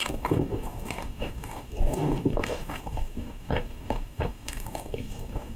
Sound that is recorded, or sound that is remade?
remade